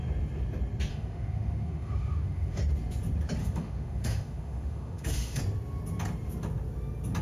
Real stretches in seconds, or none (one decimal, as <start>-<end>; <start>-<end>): 0.0-0.9; 2.6-3.4; 5.4-7.2